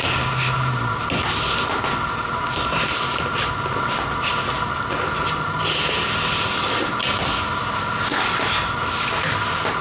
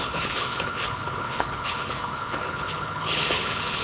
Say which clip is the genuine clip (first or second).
first